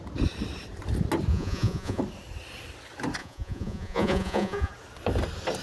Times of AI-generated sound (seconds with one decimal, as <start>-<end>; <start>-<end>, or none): 1.3-2.0; 3.2-4.7